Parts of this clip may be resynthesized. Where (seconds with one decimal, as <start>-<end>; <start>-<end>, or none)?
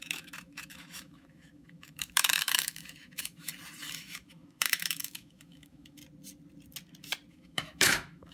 0.0-3.5; 4.0-6.0; 7.3-8.3